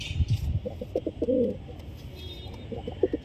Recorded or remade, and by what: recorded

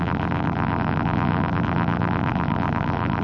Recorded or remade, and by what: remade, vocoder, BigVGAN v2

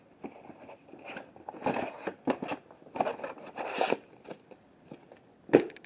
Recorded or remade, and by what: recorded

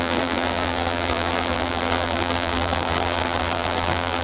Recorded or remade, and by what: remade, vocoder, BigVGAN v2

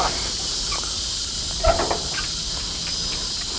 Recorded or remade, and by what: recorded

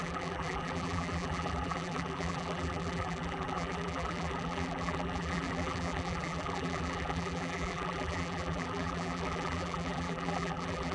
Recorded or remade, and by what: remade, vocoder, BigVGAN v2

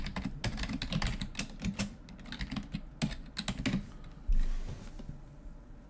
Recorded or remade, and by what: recorded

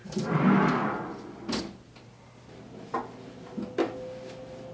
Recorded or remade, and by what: recorded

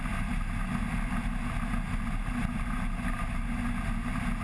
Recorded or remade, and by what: recorded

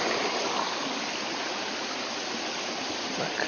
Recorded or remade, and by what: remade, vocoder, BigVGAN v2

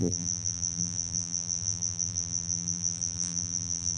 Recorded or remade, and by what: remade, vocoder, BigVGAN v2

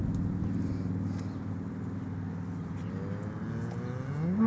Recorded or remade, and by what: recorded